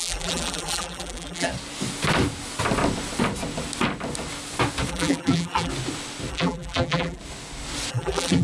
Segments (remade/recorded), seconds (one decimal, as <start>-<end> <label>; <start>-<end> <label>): 0.0-1.5 remade; 1.5-4.9 recorded; 4.9-5.7 remade; 5.7-6.3 recorded; 6.3-7.2 remade; 7.2-7.9 recorded; 7.9-8.4 remade